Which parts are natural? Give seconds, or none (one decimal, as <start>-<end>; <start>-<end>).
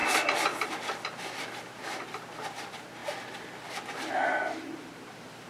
0.0-5.5